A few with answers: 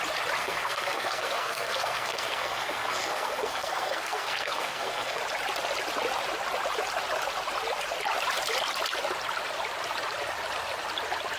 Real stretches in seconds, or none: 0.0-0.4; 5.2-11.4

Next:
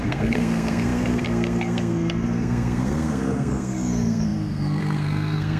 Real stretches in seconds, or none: none

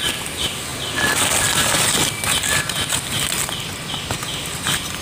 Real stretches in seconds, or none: 0.0-5.0

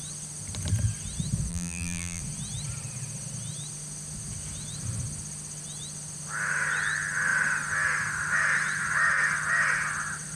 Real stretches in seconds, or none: 0.0-1.5; 2.2-10.4

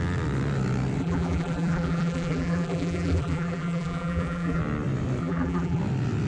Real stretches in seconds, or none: 0.0-1.0; 4.6-5.2; 5.8-6.3

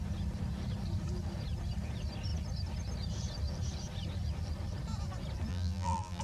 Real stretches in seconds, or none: 0.0-5.5